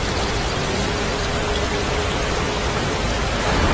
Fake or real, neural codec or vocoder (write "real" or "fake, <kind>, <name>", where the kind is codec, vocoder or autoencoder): real